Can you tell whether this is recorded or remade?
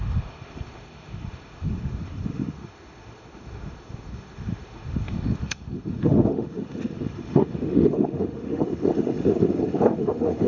remade